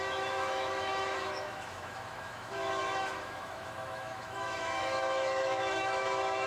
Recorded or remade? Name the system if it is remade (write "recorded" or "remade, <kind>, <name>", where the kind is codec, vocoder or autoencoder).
remade, autoencoder, DAC-VAE